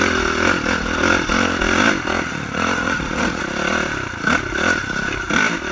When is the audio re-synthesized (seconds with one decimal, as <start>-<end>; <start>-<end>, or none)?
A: 2.3-3.4